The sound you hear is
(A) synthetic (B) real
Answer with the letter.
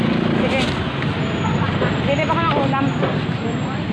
B